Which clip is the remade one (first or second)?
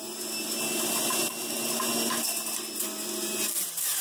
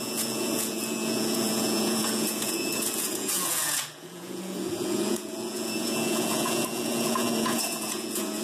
second